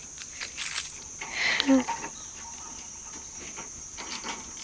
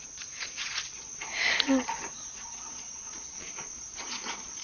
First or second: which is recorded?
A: first